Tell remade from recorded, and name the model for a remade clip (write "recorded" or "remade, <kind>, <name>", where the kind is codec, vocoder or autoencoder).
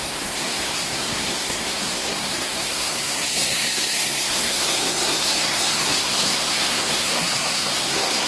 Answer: remade, codec, SNAC